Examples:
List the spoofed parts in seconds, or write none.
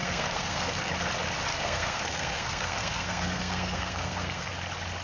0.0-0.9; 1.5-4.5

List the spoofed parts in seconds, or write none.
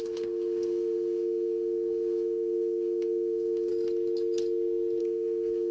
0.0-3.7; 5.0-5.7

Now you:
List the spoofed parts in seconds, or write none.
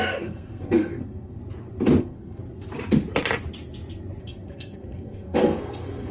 0.0-1.4; 2.0-2.4; 4.2-6.1